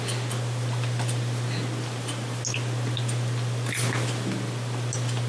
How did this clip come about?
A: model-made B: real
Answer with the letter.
B